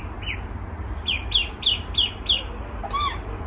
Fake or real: real